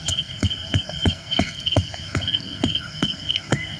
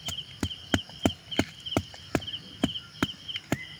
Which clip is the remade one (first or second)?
first